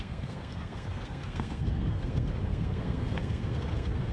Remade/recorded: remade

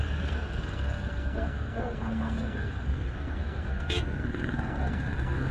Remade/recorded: remade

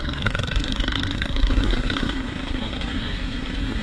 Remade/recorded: remade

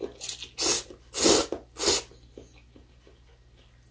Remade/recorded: recorded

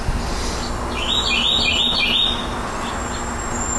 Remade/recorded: recorded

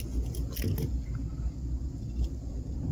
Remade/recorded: recorded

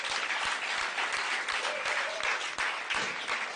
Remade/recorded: recorded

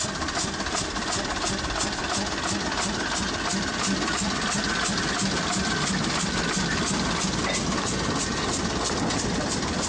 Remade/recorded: recorded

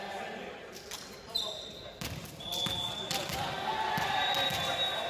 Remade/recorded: recorded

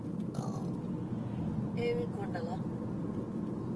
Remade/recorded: recorded